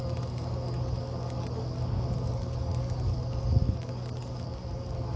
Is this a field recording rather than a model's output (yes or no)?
no